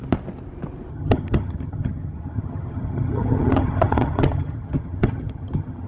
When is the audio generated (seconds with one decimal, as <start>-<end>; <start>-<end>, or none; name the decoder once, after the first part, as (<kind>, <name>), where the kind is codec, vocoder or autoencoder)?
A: 0.9-5.9 (vocoder, HiFi-GAN)